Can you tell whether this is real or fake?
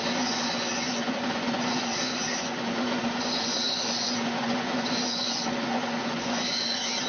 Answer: fake